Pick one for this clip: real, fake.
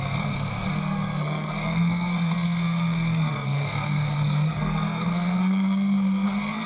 fake